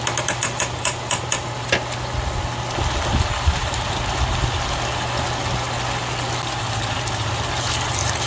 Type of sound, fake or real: real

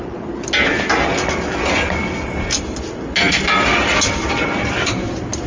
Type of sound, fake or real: real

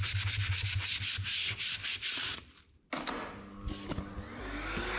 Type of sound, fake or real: real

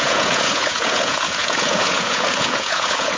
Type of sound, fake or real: fake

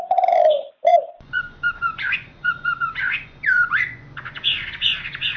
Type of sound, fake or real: fake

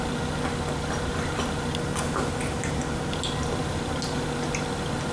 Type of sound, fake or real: real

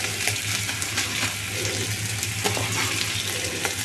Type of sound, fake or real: real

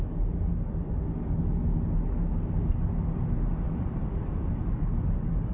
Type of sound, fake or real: real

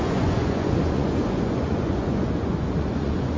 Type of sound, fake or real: fake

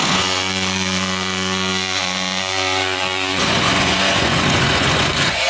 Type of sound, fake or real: fake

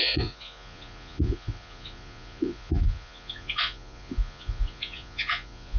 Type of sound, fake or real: fake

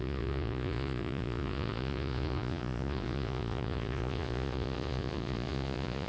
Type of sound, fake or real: fake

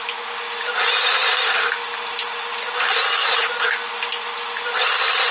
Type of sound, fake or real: real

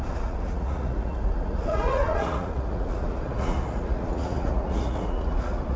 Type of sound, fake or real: fake